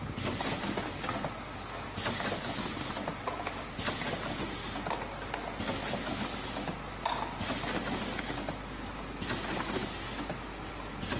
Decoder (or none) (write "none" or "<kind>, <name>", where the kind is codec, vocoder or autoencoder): none